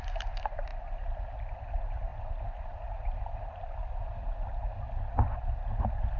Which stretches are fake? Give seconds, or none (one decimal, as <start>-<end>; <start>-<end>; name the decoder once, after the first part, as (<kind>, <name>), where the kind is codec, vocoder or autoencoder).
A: none